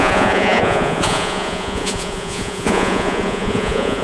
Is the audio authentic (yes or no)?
no